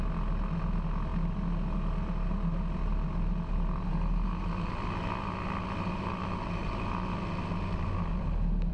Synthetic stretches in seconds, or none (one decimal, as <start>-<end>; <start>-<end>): none